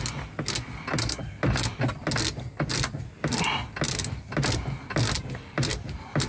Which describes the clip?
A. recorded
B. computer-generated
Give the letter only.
A